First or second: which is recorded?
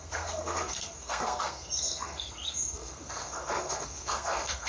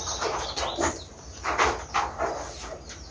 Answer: second